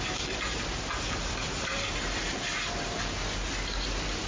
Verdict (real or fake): real